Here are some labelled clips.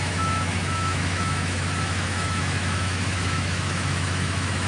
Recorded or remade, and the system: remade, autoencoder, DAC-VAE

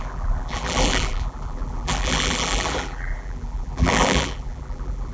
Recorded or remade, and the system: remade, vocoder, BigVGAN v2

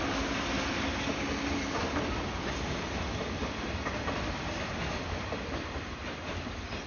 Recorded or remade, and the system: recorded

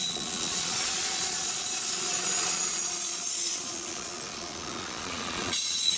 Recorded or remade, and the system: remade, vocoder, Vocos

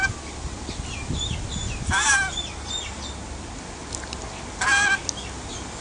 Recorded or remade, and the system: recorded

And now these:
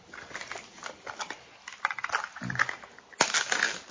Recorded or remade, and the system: recorded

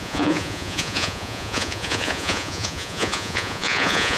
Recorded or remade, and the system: remade, vocoder, Vocos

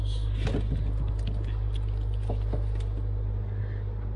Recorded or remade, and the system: recorded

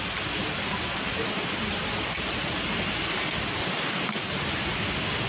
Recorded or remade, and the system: recorded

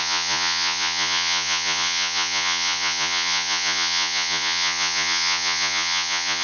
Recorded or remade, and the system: remade, vocoder, Vocos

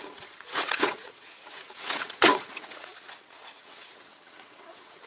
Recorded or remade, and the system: remade, vocoder, WaveNeXt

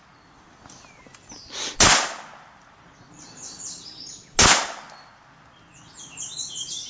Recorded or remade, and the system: recorded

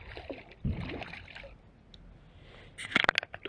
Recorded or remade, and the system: recorded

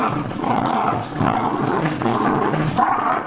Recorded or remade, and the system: remade, vocoder, Vocos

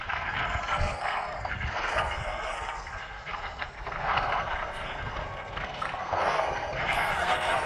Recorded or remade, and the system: remade, codec, SNAC